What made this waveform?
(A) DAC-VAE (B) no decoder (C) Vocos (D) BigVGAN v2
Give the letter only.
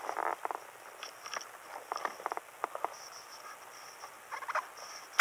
B